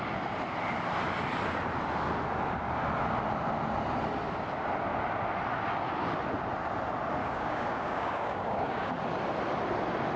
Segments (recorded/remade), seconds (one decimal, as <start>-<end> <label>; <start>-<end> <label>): 0.0-7.2 recorded; 7.2-8.9 remade; 8.9-10.2 recorded